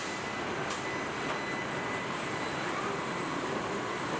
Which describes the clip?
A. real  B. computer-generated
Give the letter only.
A